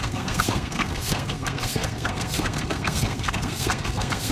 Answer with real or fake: fake